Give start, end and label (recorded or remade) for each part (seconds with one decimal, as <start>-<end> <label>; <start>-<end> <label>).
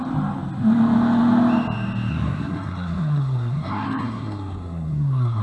0.0-2.1 recorded; 2.1-5.4 remade